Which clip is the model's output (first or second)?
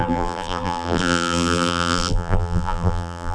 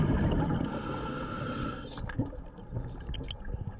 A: first